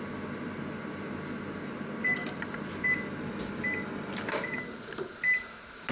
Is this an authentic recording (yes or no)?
yes